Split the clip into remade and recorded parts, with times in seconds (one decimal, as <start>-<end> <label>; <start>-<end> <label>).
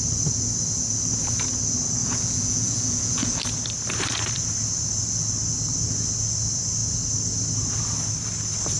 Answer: 0.0-2.0 recorded; 2.0-3.4 remade; 3.4-8.8 recorded